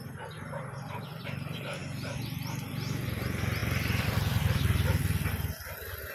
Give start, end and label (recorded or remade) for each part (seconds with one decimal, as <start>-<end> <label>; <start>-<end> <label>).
0.0-3.6 recorded; 3.6-5.3 remade; 5.3-6.1 recorded